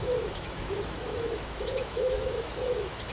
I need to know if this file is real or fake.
fake